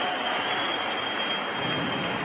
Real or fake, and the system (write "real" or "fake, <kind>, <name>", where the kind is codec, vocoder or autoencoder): real